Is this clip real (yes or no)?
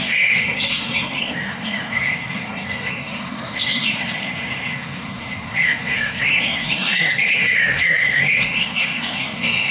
no